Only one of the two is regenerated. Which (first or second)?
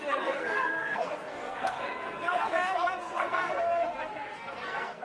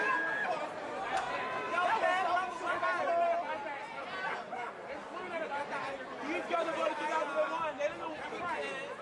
first